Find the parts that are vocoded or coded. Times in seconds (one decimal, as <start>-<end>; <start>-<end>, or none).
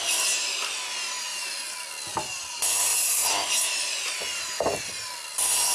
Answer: 1.3-1.9; 2.9-4.1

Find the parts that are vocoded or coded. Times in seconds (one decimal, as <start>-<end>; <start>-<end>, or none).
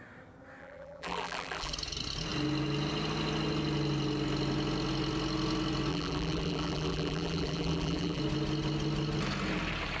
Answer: 0.6-1.7; 5.9-8.2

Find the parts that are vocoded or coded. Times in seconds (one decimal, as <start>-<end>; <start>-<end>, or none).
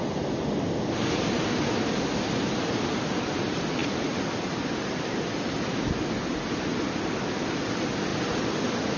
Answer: 3.8-5.6; 8.1-8.6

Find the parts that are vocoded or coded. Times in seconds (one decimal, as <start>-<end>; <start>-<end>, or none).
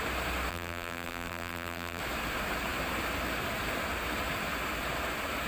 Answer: 0.5-2.0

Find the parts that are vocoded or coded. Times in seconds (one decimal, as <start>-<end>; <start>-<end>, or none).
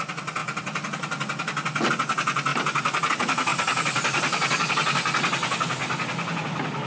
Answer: 0.4-1.9; 2.5-3.1; 3.5-4.7; 5.8-6.4